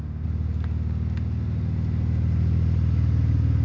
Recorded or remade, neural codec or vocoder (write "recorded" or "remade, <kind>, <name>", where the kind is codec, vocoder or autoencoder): recorded